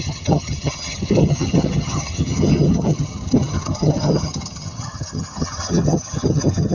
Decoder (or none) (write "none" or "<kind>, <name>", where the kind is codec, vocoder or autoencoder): vocoder, HiFi-GAN